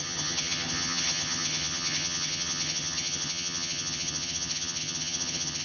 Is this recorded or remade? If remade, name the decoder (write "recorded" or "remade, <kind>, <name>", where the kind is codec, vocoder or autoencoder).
remade, vocoder, HiFi-GAN